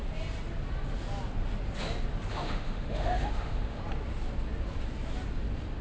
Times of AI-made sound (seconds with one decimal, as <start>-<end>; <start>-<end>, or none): 2.3-3.8